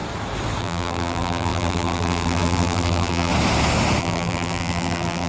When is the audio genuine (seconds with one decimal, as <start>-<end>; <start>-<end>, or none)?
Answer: 0.0-0.6; 3.3-4.0